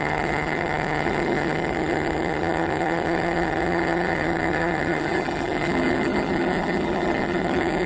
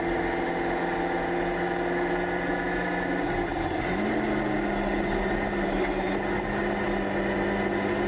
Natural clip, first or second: second